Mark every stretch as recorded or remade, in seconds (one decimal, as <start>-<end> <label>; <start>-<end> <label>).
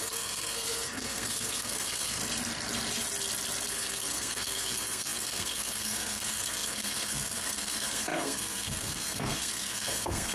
0.0-2.2 remade; 2.2-3.7 recorded; 3.7-10.3 remade